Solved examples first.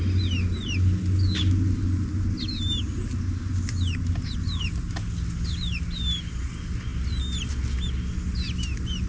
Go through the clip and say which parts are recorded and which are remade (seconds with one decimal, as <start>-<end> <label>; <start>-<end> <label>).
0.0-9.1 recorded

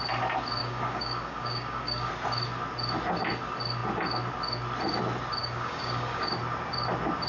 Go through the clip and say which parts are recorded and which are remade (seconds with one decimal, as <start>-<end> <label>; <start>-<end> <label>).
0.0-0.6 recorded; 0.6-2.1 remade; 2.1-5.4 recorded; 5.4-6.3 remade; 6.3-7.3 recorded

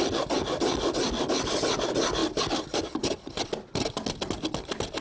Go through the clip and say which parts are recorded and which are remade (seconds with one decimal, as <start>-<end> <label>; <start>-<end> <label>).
0.0-5.0 recorded